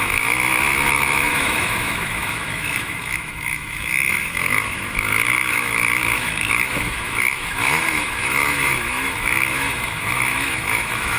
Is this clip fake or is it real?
fake